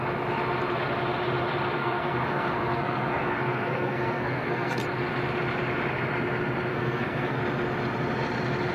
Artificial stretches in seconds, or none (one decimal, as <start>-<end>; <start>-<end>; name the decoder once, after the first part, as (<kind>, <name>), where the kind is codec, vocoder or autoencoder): 1.8-4.8 (codec, SNAC); 6.7-7.4